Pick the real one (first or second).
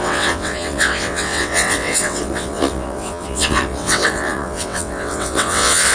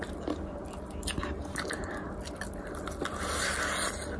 second